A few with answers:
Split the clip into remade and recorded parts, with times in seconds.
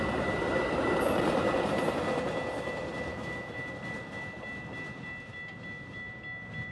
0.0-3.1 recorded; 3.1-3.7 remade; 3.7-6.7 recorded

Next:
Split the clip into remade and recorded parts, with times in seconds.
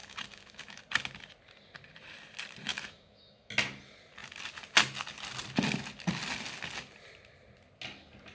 0.0-0.8 remade; 0.8-2.7 recorded; 2.7-3.5 remade; 3.5-8.3 recorded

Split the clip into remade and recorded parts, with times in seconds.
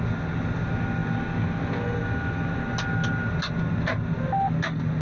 0.0-5.0 recorded